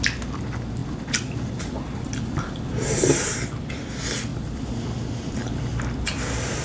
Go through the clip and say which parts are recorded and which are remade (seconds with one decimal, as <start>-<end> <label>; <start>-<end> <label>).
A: 0.0-4.3 recorded; 4.3-4.8 remade; 4.8-6.6 recorded